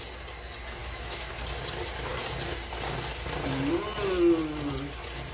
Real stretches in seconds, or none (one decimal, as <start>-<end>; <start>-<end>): 0.0-0.8; 1.3-5.3